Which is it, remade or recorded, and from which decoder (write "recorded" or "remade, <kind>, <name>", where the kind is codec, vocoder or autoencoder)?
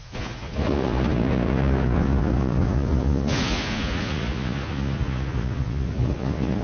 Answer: remade, vocoder, Vocos